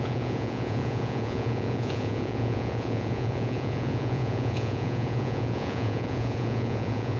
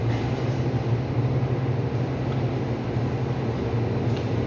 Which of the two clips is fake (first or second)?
first